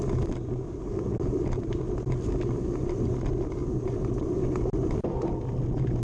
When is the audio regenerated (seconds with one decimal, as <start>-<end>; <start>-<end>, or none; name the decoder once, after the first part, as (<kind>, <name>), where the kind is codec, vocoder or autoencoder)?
none